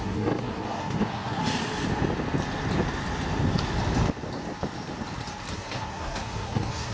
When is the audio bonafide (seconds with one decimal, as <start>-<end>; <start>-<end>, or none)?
1.4-5.5